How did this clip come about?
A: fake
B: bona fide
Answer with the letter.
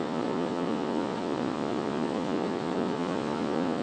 A